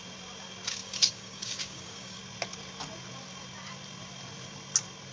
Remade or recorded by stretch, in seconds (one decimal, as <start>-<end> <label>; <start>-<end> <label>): 0.0-0.8 recorded; 0.8-2.2 remade; 2.2-5.1 recorded